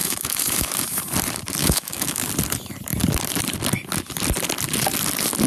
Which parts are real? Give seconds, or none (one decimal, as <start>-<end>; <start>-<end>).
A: 1.0-1.6; 2.3-5.5